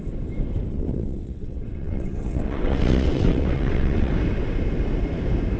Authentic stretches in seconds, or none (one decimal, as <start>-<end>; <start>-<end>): 0.0-0.7; 4.1-5.6